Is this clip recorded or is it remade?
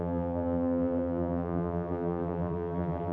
remade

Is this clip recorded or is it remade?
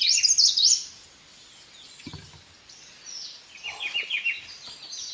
recorded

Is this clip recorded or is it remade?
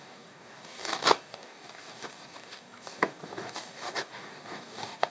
remade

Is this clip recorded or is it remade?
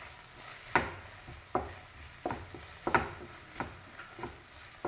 recorded